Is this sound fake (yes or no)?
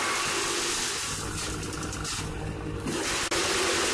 no